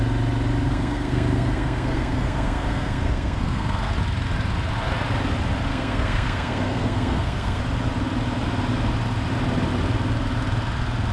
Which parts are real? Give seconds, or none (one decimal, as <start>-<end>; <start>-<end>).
0.0-0.7; 3.9-5.7; 7.6-11.1